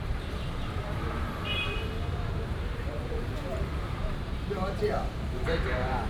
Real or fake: fake